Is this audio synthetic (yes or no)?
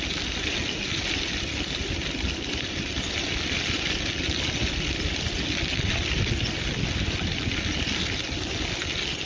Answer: no